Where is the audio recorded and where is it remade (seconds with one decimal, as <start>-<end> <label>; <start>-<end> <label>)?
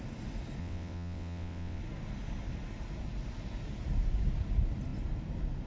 0.0-0.6 recorded; 0.6-1.8 remade; 1.8-5.7 recorded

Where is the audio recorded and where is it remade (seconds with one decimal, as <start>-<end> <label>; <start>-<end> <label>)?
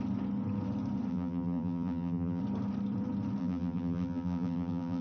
0.0-1.1 recorded; 1.1-2.4 remade; 2.4-3.4 recorded; 3.4-5.0 remade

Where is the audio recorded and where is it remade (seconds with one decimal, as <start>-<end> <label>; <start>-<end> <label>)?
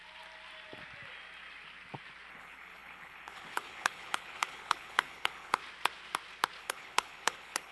0.0-2.3 recorded; 2.3-5.6 remade; 5.6-6.6 recorded; 6.6-7.7 remade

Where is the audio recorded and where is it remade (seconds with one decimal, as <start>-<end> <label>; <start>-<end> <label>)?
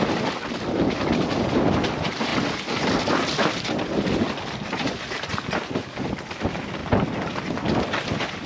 0.0-8.5 recorded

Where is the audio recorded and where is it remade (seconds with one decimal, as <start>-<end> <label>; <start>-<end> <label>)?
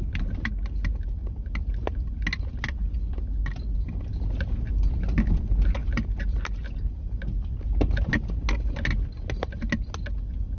0.0-10.6 recorded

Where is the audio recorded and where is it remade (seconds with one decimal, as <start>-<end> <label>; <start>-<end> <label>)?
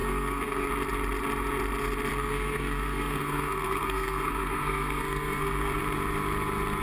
0.0-0.7 remade; 0.7-2.1 recorded; 2.1-5.8 remade; 5.8-6.8 recorded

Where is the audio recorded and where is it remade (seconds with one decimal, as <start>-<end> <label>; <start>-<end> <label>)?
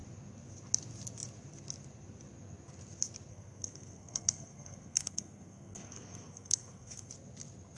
0.0-3.3 recorded; 3.3-7.1 remade; 7.1-7.8 recorded